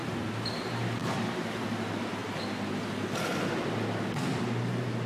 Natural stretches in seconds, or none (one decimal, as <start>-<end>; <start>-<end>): 0.0-0.5; 2.2-4.4